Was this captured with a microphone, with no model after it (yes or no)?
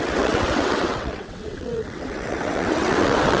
no